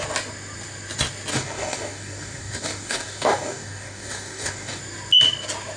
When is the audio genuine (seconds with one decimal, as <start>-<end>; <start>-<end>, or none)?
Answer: 0.0-1.3; 4.8-5.8